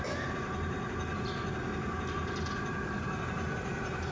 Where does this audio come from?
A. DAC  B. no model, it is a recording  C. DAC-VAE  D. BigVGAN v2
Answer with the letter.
B